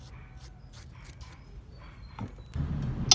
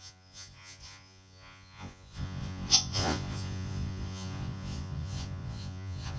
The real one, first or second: first